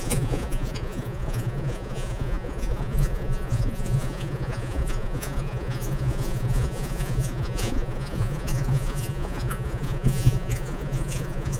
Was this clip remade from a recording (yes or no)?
yes